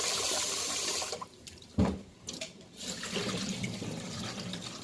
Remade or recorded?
remade